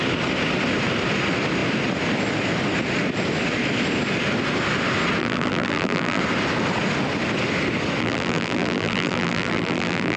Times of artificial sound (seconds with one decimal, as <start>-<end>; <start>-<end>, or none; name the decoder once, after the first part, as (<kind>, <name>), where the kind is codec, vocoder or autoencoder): 5.2-6.2 (vocoder, BigVGAN v2); 8.0-10.2